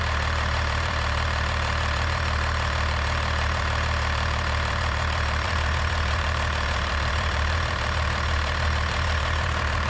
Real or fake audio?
fake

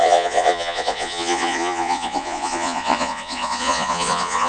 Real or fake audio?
fake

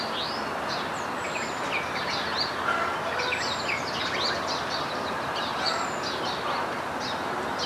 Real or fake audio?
real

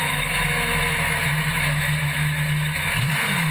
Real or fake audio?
fake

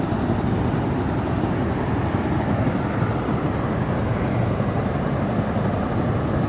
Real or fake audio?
real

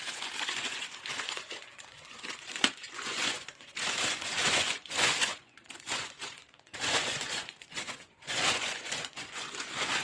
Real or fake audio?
fake